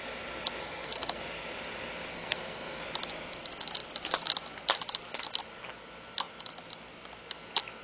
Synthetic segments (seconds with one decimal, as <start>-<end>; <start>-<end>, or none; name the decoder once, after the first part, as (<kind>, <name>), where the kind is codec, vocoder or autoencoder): 0.6-1.2 (codec, SNAC); 2.1-2.8